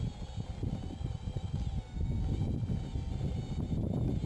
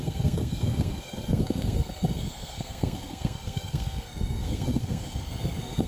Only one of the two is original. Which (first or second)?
first